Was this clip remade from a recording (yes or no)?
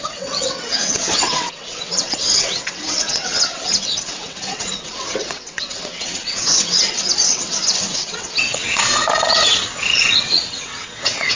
yes